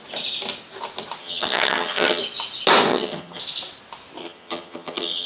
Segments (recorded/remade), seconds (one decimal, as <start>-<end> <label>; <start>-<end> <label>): 0.0-1.2 recorded; 1.2-2.2 remade; 2.2-2.9 recorded; 2.9-3.4 remade; 3.4-4.2 recorded; 4.2-5.3 remade